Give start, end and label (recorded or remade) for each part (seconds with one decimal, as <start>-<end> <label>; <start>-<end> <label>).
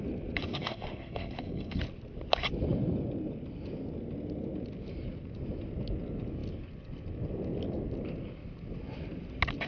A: 0.0-0.5 recorded; 0.5-1.8 remade; 1.8-9.7 recorded